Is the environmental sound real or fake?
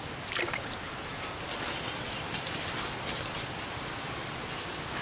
real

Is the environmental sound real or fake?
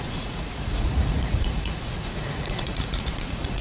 fake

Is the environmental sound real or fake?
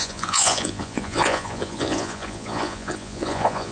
fake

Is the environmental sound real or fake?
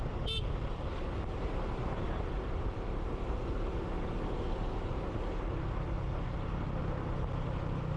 real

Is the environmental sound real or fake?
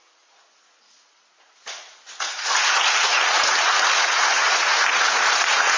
fake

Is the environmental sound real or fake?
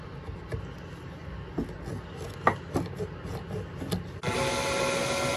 real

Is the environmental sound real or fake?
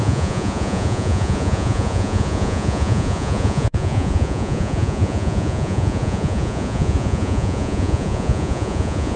fake